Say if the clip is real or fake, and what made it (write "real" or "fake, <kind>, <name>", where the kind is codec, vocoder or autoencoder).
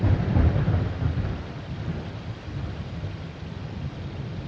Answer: real